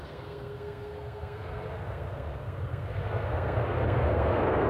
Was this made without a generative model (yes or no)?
no